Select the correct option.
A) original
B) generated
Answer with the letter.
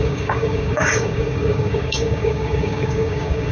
B